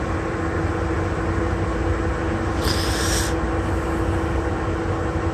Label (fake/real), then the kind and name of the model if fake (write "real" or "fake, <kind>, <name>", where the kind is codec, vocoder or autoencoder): real